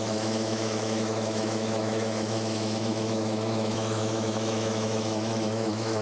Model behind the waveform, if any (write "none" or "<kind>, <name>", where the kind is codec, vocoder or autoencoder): autoencoder, DAC-VAE